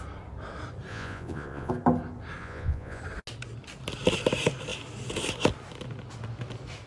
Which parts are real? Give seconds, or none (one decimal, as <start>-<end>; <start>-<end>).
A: 0.0-0.9; 1.7-2.4; 3.0-6.9